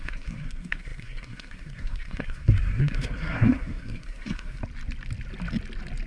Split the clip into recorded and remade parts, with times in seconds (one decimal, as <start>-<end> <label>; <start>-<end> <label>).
0.0-4.6 remade; 4.6-6.1 recorded